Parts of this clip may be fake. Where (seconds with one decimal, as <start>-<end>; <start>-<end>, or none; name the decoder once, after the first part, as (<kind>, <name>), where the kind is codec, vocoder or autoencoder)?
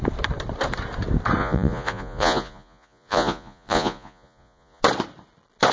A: 1.4-4.8 (vocoder, Vocos)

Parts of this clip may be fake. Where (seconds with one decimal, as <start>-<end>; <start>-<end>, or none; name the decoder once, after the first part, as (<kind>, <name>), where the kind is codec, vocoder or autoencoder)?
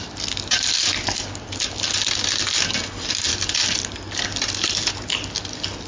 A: none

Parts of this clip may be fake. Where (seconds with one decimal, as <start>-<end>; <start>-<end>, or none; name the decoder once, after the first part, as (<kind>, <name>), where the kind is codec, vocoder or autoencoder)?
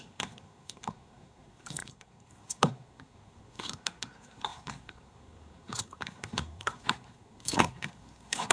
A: 0.0-8.5 (codec, SNAC)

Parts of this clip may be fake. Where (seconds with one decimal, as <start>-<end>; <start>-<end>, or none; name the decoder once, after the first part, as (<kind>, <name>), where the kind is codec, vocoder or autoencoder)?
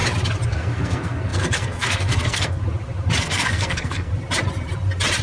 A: 0.5-2.6 (codec, SNAC); 3.2-4.1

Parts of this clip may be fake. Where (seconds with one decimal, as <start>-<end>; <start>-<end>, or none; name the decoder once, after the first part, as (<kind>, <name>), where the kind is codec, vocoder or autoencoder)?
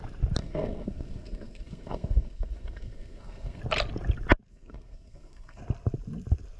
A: 0.4-3.6 (codec, SNAC); 4.5-5.6